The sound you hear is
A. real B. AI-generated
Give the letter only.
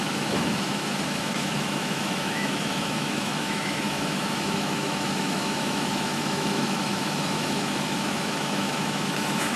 B